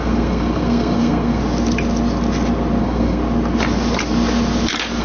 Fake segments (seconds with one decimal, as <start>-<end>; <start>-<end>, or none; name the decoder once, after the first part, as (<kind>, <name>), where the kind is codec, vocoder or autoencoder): 0.0-1.4 (codec, SNAC); 2.8-3.2